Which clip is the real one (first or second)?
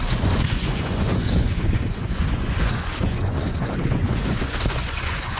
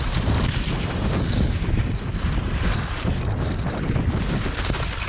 second